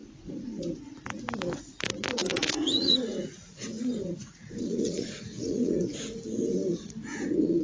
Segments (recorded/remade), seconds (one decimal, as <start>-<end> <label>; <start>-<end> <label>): 0.0-0.7 remade; 0.7-2.2 recorded; 2.2-5.8 remade; 5.8-6.7 recorded; 6.7-7.6 remade